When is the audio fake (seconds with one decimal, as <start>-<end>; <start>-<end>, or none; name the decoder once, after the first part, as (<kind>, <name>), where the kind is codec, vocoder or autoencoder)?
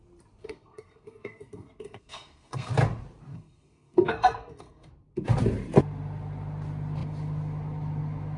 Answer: 0.4-2.7 (codec, SNAC); 3.3-4.9